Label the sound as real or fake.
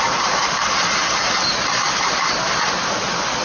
real